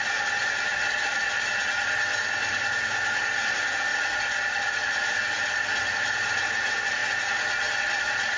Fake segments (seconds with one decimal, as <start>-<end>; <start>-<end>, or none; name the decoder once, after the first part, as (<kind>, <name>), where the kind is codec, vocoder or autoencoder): none